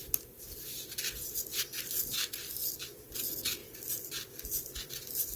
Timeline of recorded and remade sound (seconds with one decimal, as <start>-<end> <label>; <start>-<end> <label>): 0.0-3.2 recorded; 3.2-5.4 remade